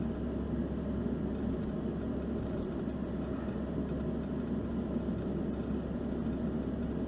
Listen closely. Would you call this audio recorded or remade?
recorded